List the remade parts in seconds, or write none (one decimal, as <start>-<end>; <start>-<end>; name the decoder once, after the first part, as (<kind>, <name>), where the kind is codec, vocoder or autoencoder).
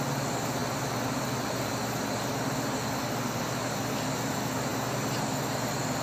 none